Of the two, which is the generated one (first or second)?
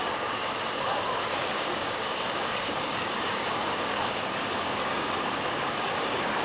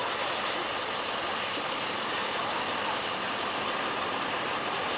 first